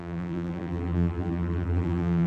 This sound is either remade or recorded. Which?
remade